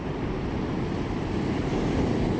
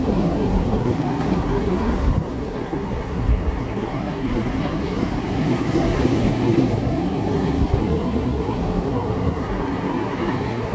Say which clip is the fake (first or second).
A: second